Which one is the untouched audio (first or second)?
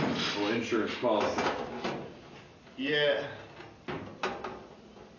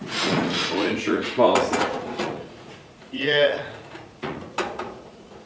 first